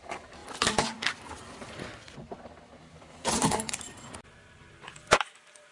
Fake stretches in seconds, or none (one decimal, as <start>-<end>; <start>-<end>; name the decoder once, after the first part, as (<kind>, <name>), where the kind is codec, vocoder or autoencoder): 0.4-3.8 (vocoder, BigVGAN v2)